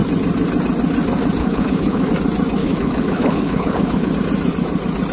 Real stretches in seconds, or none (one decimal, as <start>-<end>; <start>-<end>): 0.0-1.4; 2.1-2.6; 4.1-5.1